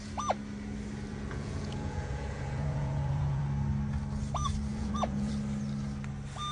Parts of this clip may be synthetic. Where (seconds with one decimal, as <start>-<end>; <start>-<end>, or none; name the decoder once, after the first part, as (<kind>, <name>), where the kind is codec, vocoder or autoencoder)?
1.1-3.4 (vocoder, Vocos); 4.7-5.3